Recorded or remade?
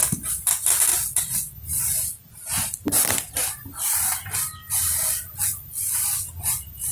recorded